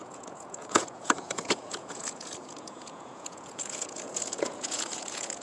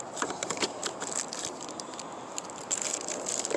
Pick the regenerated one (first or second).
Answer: first